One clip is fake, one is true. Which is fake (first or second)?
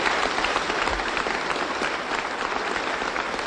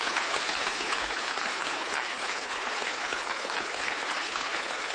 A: second